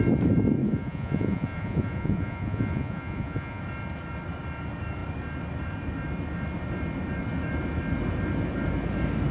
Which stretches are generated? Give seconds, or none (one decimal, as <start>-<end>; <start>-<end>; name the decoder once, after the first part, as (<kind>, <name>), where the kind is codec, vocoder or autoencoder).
0.6-3.6 (vocoder, Vocos)